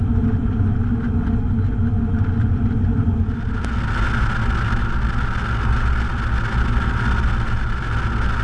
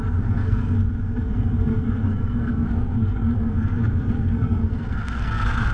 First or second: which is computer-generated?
second